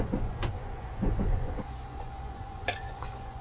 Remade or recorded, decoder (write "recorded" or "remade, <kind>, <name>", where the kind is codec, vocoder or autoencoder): remade, vocoder, Vocos